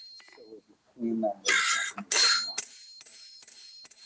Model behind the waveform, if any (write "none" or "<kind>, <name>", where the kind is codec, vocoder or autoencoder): none